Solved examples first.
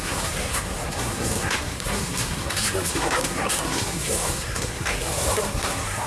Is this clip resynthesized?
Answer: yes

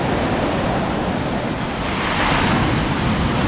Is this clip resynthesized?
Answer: no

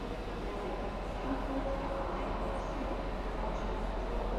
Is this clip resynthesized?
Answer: no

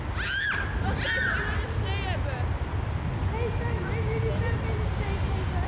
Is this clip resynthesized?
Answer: no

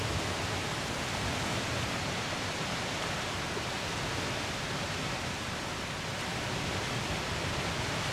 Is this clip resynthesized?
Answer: no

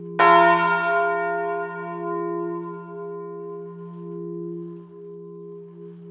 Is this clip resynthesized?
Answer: no